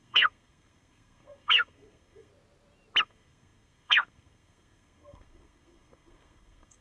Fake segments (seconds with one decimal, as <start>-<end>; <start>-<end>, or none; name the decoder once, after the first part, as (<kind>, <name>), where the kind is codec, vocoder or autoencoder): 0.0-2.3 (codec, SNAC); 3.0-6.8

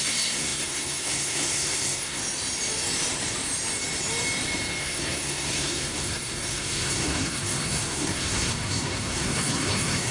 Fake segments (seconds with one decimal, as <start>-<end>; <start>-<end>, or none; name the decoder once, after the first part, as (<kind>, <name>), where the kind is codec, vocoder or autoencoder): 0.0-2.2 (codec, SNAC); 4.8-10.1

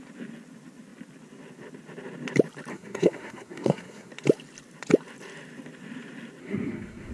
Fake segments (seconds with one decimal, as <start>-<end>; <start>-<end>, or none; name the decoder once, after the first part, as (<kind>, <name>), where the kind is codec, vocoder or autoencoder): 2.7-4.1 (codec, SNAC); 6.4-7.1